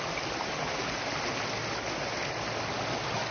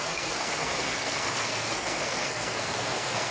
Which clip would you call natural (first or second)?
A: first